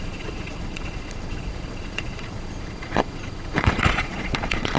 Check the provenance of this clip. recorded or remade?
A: remade